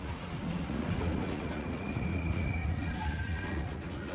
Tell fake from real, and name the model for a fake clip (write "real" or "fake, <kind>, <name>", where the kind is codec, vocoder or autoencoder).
fake, vocoder, Vocos